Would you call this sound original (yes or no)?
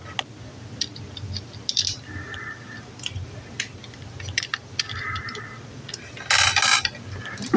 yes